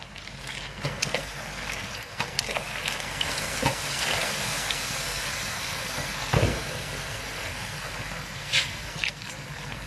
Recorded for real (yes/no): no